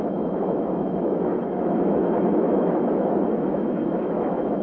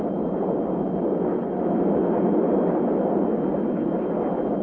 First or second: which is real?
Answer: second